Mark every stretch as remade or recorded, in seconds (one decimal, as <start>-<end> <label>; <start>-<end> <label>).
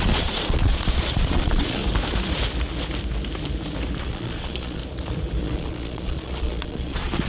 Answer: 0.0-1.8 remade; 1.8-4.0 recorded; 4.0-4.8 remade; 4.8-5.4 recorded; 5.4-7.3 remade